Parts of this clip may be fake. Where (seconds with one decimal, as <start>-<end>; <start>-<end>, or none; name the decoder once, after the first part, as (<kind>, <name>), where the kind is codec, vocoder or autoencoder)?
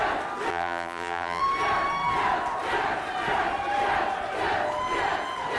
0.5-1.4 (vocoder, BigVGAN v2)